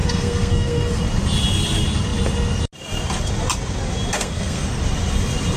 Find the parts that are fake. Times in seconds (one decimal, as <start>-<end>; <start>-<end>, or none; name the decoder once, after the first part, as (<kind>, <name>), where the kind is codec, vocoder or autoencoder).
0.0-1.0 (codec, SNAC); 4.1-4.8